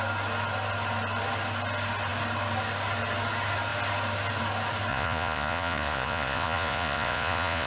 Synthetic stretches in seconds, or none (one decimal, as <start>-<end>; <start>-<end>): 4.9-7.7